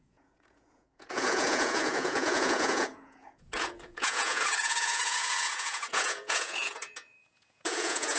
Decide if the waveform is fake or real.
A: fake